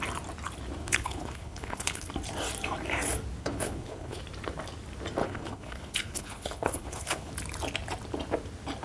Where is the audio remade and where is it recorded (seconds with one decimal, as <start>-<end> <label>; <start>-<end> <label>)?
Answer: 0.0-0.8 recorded; 0.8-2.1 remade; 2.1-3.4 recorded; 3.4-4.2 remade; 4.2-5.2 recorded; 5.2-7.3 remade; 7.3-8.8 recorded